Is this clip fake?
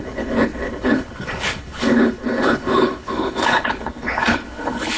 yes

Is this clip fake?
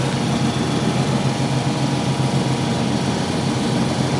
no